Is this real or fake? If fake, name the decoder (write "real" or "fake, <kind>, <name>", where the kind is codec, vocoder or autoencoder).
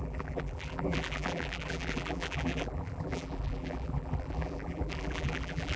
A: fake, vocoder, BigVGAN v2